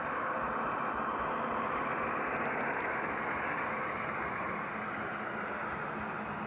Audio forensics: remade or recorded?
recorded